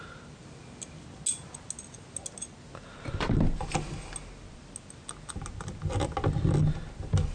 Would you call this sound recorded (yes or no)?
yes